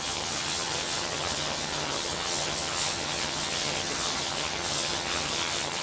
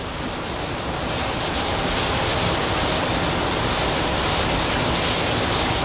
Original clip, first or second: second